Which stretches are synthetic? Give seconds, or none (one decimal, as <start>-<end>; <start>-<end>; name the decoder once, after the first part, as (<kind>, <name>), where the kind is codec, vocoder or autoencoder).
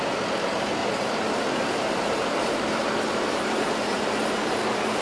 0.0-5.0 (vocoder, BigVGAN v2)